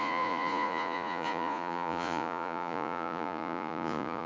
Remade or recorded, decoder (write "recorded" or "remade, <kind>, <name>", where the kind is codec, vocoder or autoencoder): remade, vocoder, Vocos